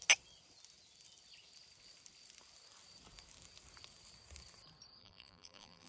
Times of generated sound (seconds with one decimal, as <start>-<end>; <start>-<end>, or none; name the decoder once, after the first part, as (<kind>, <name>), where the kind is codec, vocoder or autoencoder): 5.0-5.9 (vocoder, BigVGAN v2)